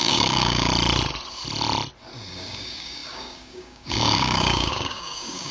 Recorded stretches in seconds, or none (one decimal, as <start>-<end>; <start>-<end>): 0.7-2.3